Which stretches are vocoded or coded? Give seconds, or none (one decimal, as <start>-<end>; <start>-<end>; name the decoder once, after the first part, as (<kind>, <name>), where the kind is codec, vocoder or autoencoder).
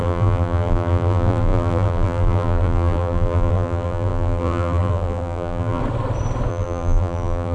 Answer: 0.0-5.8 (vocoder, BigVGAN v2); 6.5-7.5